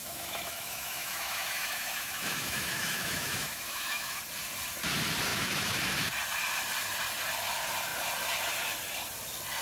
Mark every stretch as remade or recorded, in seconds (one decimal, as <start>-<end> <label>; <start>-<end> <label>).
0.0-4.2 remade; 4.2-5.3 recorded; 5.3-5.8 remade; 5.8-9.6 recorded